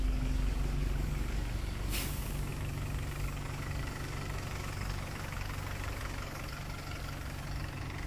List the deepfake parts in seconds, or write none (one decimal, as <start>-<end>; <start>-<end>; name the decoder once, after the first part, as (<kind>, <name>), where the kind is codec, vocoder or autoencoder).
0.0-8.1 (codec, DAC)